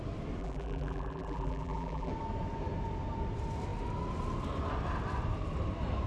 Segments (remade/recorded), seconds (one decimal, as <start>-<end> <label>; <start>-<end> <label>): 0.0-0.4 recorded; 0.4-2.1 remade; 2.1-6.1 recorded